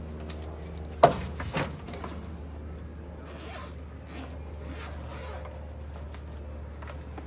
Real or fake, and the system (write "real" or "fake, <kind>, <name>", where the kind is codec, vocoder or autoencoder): real